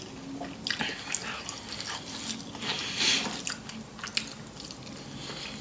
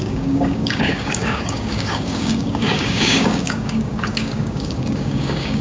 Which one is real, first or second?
first